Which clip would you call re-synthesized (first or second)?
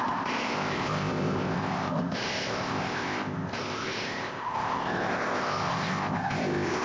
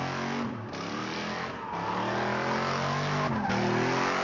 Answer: first